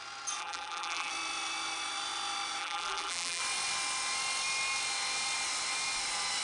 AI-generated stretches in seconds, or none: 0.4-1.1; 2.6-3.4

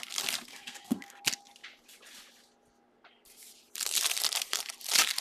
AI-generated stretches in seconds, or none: 0.5-1.2